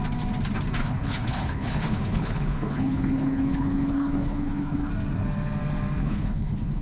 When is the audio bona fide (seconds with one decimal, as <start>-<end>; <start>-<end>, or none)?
0.0-0.8; 4.9-6.0